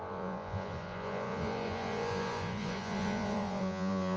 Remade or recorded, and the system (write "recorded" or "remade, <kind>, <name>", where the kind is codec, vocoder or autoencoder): remade, vocoder, Vocos